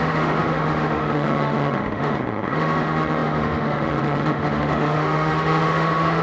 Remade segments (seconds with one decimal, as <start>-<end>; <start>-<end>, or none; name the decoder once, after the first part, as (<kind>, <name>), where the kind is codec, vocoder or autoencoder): 0.0-6.2 (autoencoder, DAC-VAE)